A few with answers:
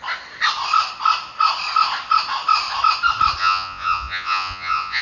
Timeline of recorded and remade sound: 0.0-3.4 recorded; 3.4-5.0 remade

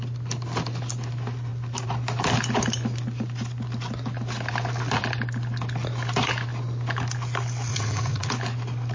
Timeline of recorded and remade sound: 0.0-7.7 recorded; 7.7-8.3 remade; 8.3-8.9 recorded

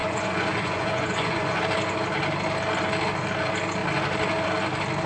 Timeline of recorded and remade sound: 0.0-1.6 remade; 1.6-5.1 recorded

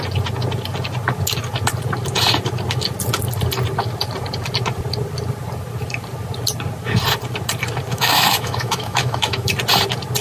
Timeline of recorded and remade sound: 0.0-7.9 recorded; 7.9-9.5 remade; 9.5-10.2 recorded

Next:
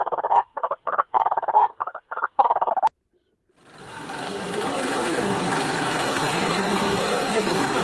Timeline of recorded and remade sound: 0.0-2.7 remade; 2.7-3.8 recorded; 3.8-7.8 remade

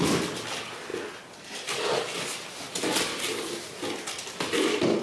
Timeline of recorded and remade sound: 0.0-5.0 recorded

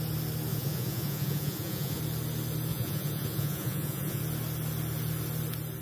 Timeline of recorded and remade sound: 0.0-0.5 recorded; 0.5-2.0 remade; 2.0-2.7 recorded; 2.7-4.2 remade; 4.2-5.8 recorded

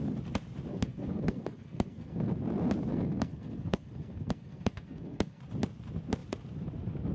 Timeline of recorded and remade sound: 0.0-0.7 recorded; 0.7-2.3 remade; 2.3-2.9 recorded; 2.9-5.4 remade; 5.4-7.1 recorded